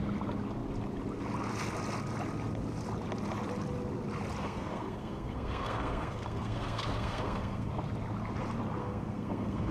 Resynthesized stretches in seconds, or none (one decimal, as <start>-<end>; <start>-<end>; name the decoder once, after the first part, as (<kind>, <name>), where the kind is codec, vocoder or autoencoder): 4.4-7.7 (codec, SNAC); 8.8-9.7